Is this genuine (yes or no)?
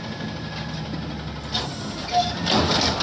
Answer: yes